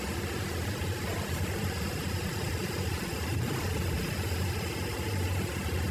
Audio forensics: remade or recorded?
remade